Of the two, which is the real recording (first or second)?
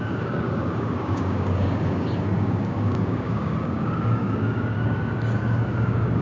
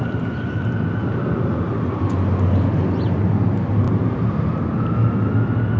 second